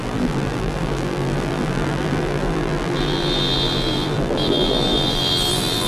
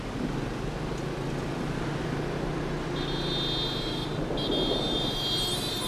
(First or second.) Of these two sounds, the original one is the second